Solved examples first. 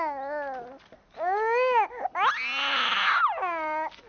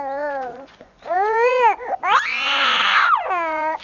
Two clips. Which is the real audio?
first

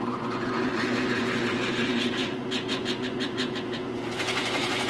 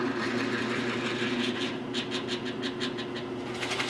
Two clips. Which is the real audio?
second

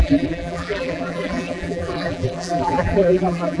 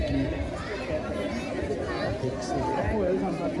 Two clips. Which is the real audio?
second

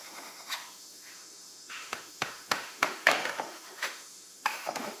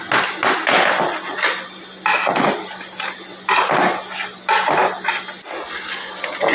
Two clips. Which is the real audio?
second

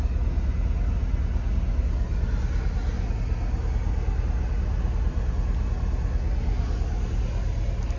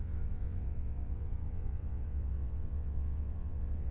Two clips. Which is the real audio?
first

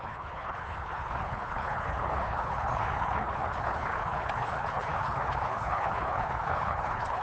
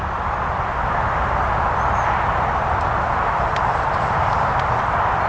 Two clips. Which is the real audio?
second